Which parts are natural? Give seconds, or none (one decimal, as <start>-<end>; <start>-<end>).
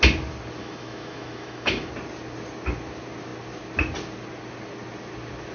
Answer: 0.0-0.6; 1.9-5.5